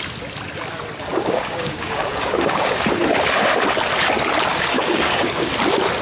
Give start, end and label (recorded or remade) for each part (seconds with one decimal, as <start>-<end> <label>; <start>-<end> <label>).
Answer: 0.0-1.1 recorded; 1.1-2.8 remade; 2.8-4.5 recorded; 4.5-5.5 remade; 5.5-6.0 recorded